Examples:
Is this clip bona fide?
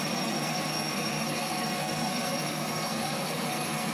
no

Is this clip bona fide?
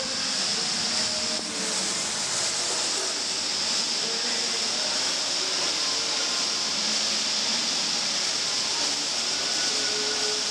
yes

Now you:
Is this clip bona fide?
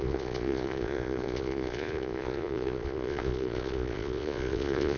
no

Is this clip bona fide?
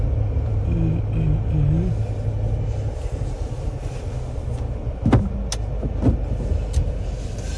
yes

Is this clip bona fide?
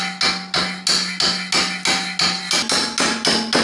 yes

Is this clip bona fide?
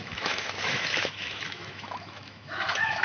no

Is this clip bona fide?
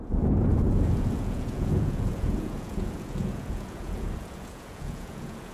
no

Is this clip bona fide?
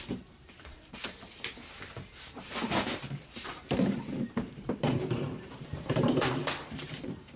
no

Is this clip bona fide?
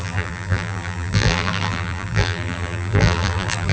no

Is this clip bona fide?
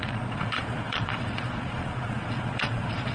no